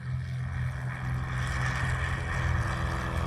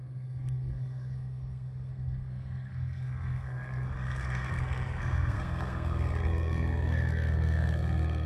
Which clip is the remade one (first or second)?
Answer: second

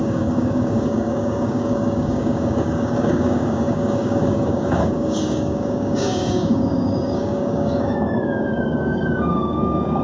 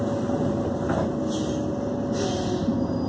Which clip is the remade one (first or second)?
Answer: first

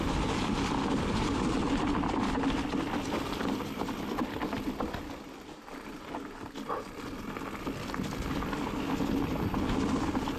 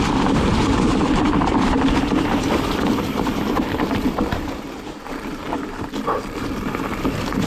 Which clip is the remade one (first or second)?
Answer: second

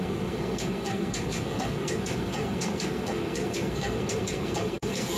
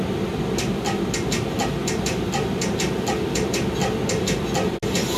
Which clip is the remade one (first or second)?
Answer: first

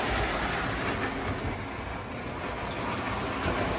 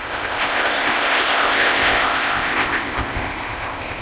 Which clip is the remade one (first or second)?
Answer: second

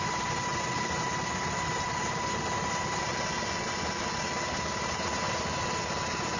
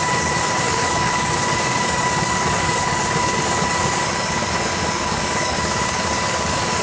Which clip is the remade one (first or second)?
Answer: second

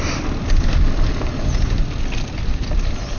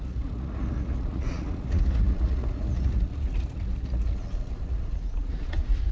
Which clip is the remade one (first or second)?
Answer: second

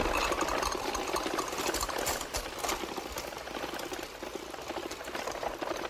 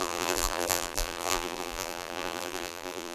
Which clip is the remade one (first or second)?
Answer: second